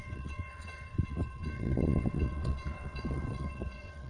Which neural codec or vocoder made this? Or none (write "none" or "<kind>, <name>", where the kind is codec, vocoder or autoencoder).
vocoder, WaveNeXt